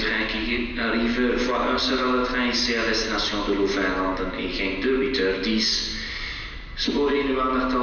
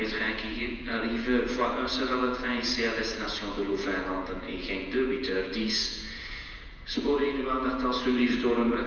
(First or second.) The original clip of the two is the first